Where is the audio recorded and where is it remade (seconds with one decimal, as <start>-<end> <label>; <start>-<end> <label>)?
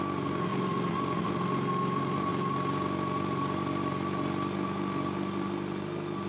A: 0.0-0.5 recorded; 0.5-1.3 remade; 1.3-2.3 recorded; 2.3-6.3 remade